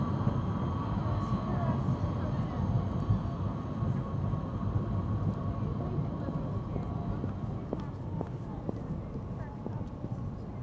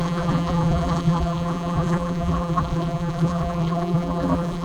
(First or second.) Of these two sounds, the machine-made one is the second